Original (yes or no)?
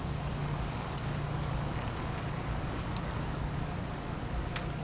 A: no